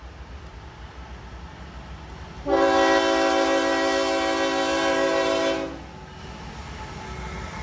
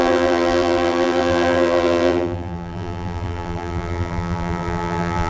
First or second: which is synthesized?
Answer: second